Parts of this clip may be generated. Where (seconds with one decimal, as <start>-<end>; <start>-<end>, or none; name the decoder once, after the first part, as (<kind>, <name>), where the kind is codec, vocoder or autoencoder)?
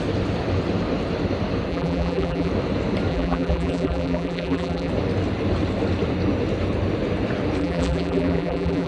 1.7-2.5 (vocoder, BigVGAN v2); 3.1-4.9; 7.6-8.9